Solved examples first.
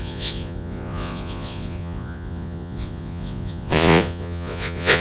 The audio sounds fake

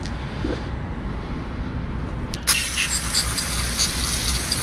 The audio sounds real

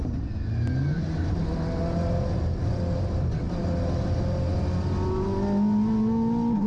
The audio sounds real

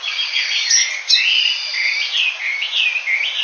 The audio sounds real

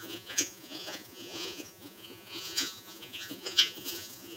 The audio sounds fake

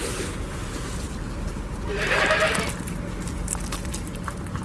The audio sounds real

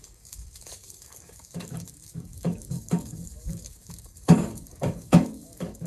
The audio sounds fake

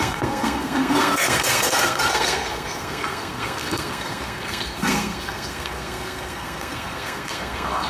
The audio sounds fake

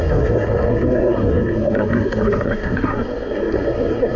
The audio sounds fake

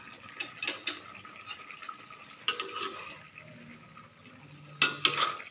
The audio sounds real